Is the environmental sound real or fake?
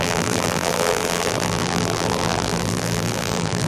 fake